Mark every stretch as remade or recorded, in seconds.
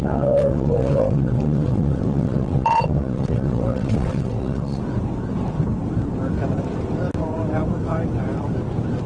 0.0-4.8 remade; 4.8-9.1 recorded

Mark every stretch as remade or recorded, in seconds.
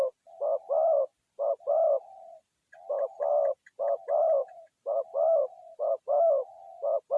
0.0-7.2 recorded